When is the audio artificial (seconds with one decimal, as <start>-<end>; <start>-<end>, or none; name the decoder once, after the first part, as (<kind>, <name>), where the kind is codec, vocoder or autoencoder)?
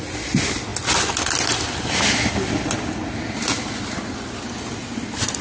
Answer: none